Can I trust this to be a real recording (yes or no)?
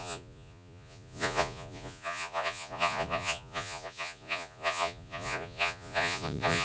no